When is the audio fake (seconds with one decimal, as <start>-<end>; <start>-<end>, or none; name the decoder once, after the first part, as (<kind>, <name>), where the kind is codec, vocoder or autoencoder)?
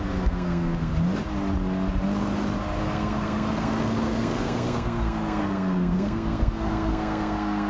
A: 0.0-0.9 (codec, SNAC); 2.8-7.7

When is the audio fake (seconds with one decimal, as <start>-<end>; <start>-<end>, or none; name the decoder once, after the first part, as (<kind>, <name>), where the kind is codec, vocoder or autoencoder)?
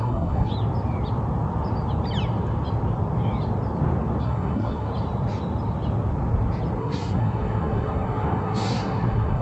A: 0.0-0.5 (codec, SNAC); 4.2-4.9; 6.8-9.4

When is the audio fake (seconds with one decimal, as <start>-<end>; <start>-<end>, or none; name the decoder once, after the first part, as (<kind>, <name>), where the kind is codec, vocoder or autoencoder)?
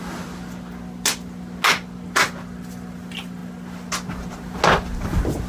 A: none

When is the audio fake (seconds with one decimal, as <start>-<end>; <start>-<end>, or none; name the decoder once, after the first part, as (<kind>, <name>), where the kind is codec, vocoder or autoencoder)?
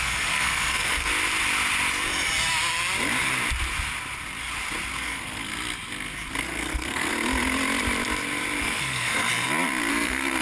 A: 0.0-1.1 (codec, SNAC); 5.0-5.5; 6.4-7.1; 8.6-9.3; 9.9-10.4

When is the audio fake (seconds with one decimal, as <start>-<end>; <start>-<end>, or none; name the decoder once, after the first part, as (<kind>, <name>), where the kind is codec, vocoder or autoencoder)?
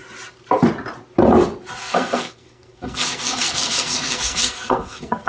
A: 1.8-5.3 (codec, SNAC)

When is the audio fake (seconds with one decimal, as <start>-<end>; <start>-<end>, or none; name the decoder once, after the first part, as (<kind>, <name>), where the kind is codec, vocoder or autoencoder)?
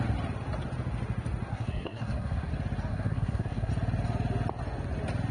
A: 1.5-2.5 (codec, SNAC); 2.9-3.7